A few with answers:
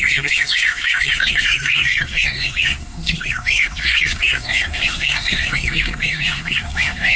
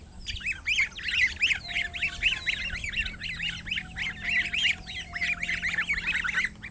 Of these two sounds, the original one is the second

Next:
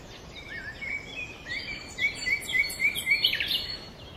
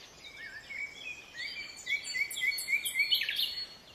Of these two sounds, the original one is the second